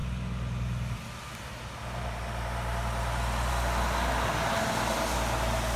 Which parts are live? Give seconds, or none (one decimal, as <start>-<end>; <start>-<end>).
0.0-5.8